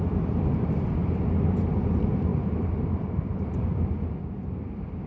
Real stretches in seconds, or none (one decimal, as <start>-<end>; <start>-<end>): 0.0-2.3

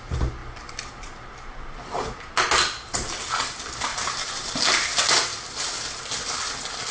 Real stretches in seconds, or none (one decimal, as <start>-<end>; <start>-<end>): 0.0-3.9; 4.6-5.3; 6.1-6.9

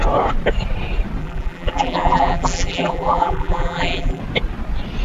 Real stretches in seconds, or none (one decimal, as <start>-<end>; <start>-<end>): 0.0-1.2; 4.2-5.0

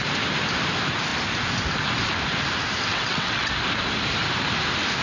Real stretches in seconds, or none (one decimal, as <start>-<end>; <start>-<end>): 0.0-2.9; 3.5-5.0

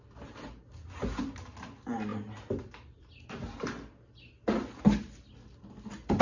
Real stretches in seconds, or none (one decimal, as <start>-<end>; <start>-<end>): 0.0-6.2

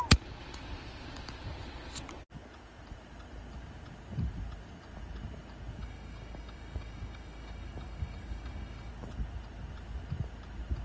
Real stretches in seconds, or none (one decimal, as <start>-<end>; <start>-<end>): 0.0-5.8; 8.9-10.8